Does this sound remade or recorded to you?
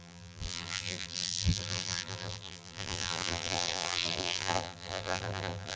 remade